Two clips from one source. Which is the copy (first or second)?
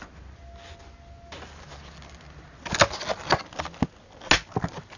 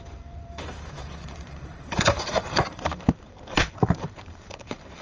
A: second